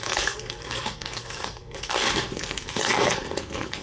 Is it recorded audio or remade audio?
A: remade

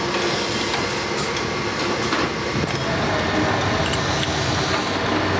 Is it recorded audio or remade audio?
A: recorded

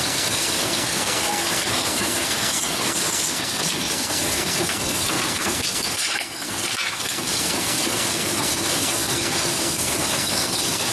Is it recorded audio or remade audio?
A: remade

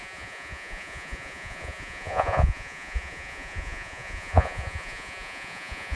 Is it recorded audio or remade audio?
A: remade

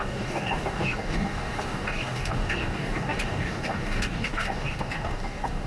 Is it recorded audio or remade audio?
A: remade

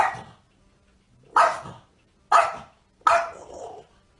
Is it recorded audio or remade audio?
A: recorded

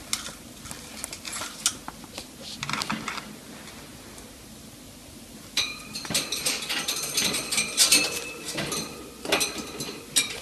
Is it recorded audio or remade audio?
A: recorded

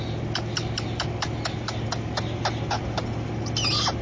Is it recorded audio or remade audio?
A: recorded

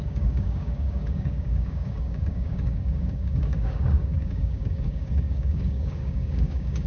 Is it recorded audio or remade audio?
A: remade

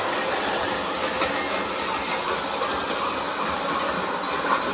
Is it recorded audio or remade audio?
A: recorded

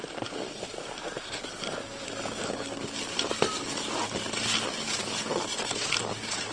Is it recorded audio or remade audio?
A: recorded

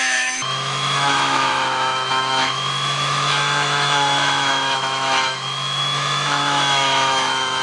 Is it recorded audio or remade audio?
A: remade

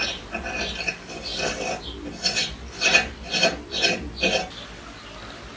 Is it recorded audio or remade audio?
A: recorded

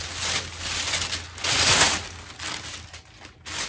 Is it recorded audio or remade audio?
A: recorded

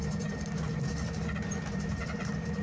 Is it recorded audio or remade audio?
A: remade